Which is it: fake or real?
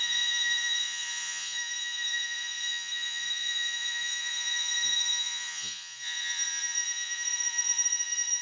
fake